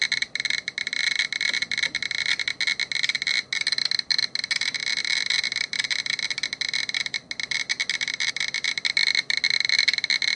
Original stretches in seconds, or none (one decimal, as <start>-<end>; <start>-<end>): 0.0-10.3